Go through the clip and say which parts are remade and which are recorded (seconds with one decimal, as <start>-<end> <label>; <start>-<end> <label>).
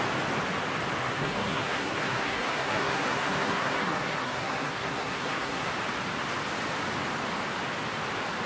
0.0-1.0 recorded; 1.0-5.7 remade; 5.7-8.5 recorded